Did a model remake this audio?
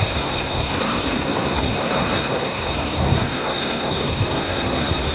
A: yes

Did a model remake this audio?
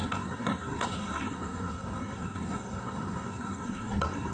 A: yes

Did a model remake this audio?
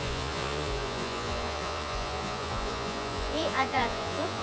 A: yes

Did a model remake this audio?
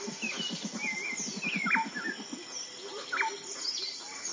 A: no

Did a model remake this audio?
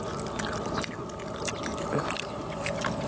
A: no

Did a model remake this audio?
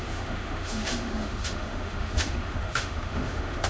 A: yes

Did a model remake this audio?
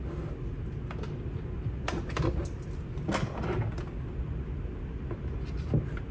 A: no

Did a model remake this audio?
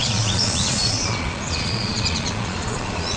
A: yes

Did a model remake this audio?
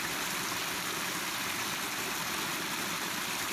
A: no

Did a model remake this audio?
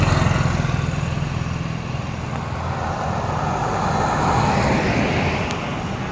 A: no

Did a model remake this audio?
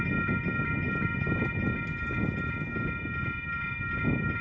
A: no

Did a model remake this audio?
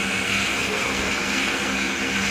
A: yes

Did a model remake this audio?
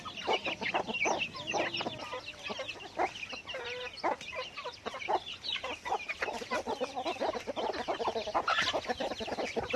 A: no